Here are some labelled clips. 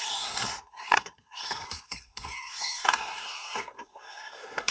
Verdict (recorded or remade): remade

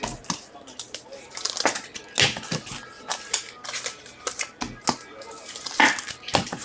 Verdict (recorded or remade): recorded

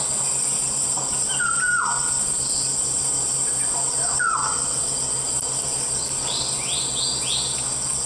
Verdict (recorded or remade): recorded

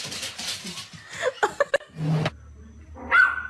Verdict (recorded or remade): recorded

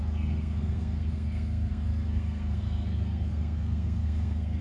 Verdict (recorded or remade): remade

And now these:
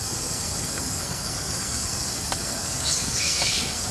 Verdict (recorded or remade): remade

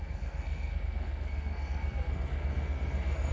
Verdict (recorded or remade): remade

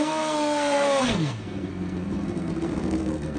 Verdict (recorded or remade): remade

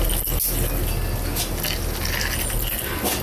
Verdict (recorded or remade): recorded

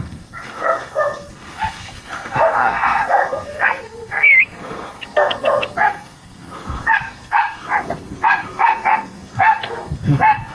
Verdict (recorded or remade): remade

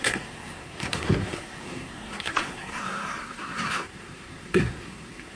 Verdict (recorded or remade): remade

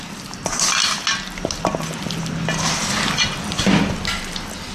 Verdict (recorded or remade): recorded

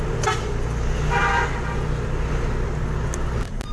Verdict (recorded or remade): recorded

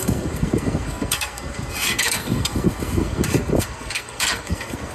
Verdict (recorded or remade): remade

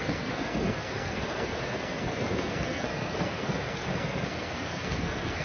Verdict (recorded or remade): remade